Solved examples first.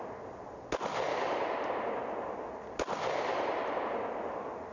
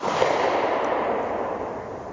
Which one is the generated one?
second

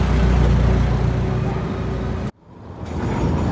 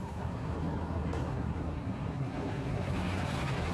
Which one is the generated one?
second